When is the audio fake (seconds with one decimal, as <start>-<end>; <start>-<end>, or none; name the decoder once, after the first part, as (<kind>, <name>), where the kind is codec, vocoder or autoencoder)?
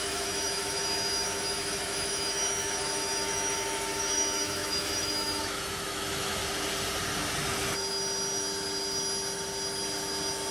0.0-6.4 (autoencoder, DAC-VAE)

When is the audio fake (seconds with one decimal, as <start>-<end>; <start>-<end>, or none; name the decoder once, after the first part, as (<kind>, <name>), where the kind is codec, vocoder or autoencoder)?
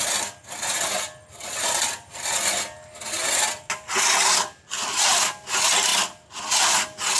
none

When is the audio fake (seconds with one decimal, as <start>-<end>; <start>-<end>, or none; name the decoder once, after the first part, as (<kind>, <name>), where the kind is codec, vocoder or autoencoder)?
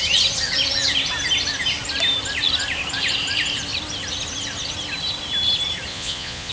5.9-6.5 (vocoder, Vocos)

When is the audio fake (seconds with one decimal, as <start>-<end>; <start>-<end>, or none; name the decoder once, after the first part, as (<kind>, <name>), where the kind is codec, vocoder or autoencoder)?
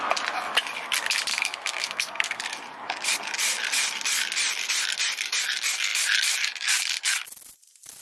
1.3-2.4 (codec, SNAC)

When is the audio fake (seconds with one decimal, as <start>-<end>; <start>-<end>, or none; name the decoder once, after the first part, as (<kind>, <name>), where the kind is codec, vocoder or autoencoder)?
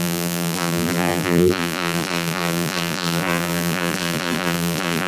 0.0-5.1 (vocoder, BigVGAN v2)